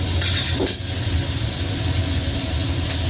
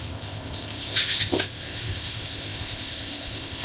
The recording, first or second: first